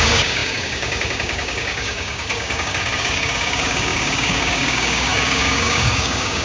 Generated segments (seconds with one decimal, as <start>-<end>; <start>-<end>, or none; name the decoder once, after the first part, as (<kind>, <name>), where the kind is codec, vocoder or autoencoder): 0.0-6.4 (codec, DAC)